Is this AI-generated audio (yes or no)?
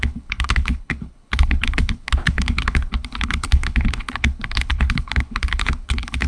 yes